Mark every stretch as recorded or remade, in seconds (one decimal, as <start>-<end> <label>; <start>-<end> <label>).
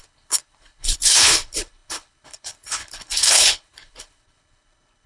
0.0-5.1 remade